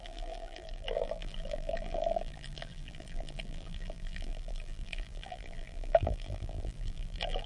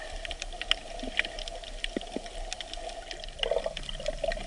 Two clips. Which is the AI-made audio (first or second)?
first